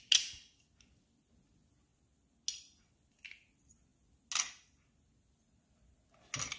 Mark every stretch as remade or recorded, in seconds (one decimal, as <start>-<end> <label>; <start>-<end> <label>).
0.0-6.6 recorded